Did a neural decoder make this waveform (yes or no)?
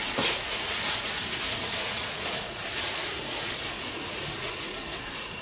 yes